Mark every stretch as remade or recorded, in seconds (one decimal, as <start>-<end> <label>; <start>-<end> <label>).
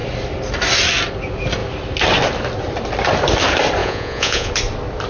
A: 0.0-3.8 recorded; 3.8-4.5 remade; 4.5-5.1 recorded